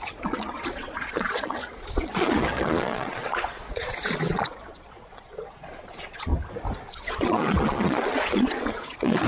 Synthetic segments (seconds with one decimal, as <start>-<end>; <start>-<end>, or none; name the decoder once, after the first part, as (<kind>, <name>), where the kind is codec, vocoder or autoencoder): 0.0-6.3 (vocoder, Vocos); 6.9-9.3